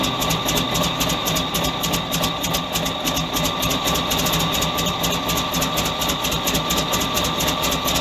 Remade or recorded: recorded